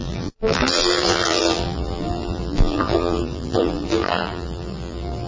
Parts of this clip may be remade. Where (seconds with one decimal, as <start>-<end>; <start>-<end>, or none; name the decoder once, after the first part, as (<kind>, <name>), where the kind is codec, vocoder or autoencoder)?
0.0-5.3 (vocoder, BigVGAN v2)